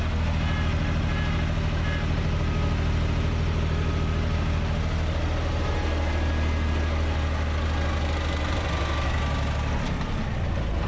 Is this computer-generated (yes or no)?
no